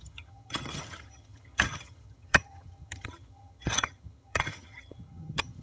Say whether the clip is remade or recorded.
remade